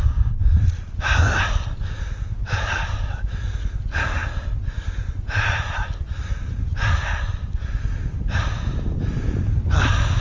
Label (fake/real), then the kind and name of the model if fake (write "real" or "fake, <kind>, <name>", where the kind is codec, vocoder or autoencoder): real